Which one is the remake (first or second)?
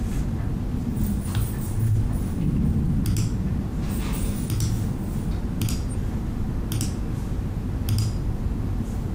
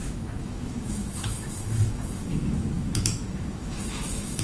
second